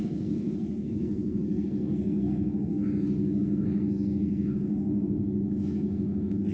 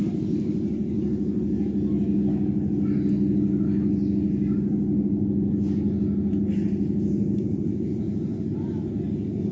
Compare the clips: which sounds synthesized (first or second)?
first